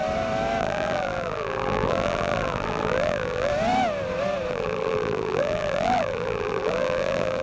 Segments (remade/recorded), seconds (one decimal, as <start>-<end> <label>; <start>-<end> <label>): 0.0-0.6 recorded; 0.6-3.5 remade; 3.5-4.5 recorded; 4.5-7.4 remade